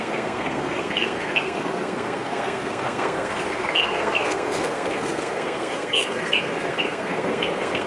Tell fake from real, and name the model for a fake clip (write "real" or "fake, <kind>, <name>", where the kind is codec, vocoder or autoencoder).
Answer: fake, codec, SNAC